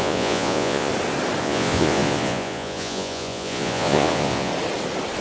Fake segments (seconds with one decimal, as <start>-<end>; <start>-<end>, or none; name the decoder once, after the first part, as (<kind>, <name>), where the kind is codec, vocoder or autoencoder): 0.0-0.9 (vocoder, Vocos); 1.4-4.5

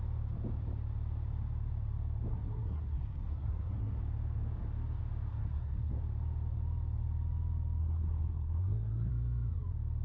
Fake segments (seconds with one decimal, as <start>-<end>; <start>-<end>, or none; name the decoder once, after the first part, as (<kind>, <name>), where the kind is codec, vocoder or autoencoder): 2.3-4.0 (codec, SNAC); 5.3-5.9; 7.8-9.1

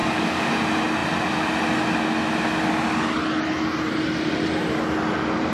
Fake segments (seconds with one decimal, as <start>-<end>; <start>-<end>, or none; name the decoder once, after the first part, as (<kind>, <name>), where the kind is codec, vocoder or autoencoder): 0.0-0.5 (codec, DAC)

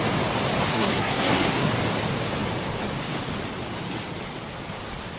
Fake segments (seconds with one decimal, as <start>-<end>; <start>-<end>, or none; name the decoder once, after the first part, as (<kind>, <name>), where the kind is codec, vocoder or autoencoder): 0.7-1.7 (codec, SNAC)

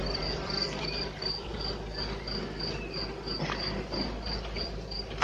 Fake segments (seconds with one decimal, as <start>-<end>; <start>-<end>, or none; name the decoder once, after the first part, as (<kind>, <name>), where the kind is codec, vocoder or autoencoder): 0.0-1.5 (vocoder, BigVGAN v2); 4.6-5.2

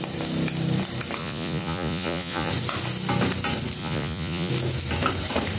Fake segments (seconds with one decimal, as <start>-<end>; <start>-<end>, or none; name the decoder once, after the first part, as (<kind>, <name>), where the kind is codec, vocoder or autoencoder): 1.2-2.5 (vocoder, Vocos); 3.8-4.5

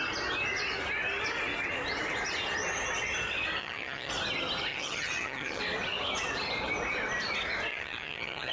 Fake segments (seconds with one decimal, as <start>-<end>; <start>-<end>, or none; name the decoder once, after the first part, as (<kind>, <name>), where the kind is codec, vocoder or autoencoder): 3.6-4.1 (vocoder, HiFi-GAN); 4.7-5.6; 7.7-8.5